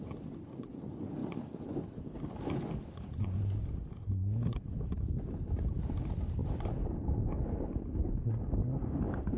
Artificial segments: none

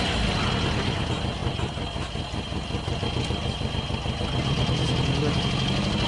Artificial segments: none

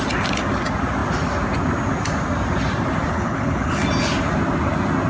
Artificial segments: 3.1-3.8